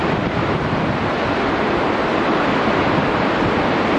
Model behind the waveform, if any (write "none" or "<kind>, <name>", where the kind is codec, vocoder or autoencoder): none